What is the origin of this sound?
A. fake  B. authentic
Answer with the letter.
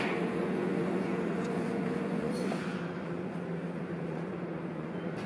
A